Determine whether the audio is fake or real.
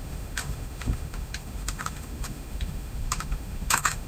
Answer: fake